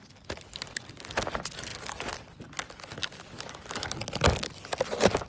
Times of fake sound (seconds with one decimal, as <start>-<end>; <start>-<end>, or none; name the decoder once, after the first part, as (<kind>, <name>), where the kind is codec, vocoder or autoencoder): none